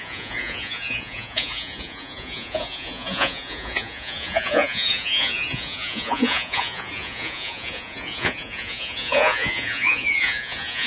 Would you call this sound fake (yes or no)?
yes